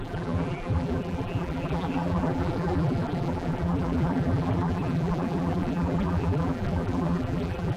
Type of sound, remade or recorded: remade